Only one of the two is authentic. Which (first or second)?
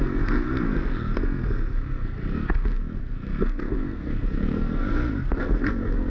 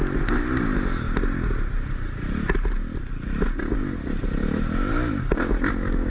second